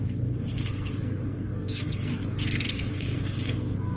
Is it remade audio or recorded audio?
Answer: remade